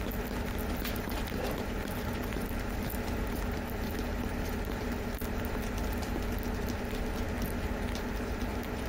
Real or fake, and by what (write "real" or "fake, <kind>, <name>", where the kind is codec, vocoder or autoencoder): real